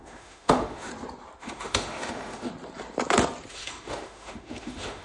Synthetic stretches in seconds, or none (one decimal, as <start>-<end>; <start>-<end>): 0.0-0.9; 1.4-2.5; 3.5-5.0